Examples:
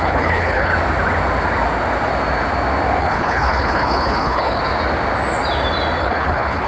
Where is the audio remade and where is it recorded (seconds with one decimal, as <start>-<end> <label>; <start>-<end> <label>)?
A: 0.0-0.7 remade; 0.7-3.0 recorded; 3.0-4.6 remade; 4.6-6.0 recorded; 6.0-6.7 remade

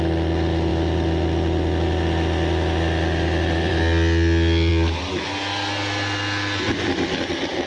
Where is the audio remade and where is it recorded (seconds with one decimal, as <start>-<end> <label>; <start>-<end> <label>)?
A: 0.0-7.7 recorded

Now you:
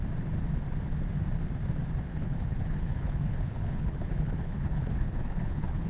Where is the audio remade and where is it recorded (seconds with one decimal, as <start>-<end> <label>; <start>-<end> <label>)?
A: 0.0-2.1 recorded; 2.1-5.9 remade

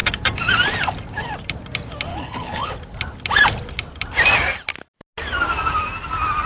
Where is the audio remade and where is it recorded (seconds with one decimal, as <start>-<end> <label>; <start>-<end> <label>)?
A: 0.0-2.1 recorded; 2.1-2.7 remade; 2.7-6.5 recorded

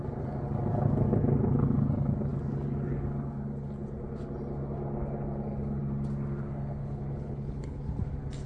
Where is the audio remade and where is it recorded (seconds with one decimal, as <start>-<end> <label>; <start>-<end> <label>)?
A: 0.0-6.8 recorded; 6.8-7.8 remade; 7.8-8.5 recorded